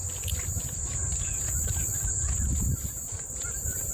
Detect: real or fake real